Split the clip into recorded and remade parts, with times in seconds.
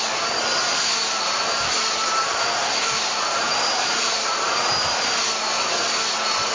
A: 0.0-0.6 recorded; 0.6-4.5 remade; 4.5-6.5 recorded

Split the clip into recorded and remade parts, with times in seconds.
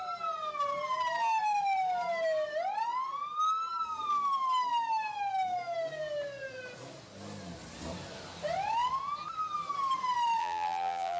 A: 0.0-10.4 recorded; 10.4-11.2 remade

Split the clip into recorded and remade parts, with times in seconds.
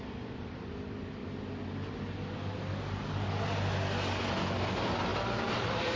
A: 0.0-5.1 recorded; 5.1-6.0 remade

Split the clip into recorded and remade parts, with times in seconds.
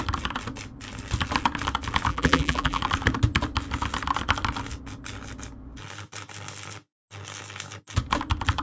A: 0.0-2.1 recorded; 2.1-2.8 remade; 2.8-8.6 recorded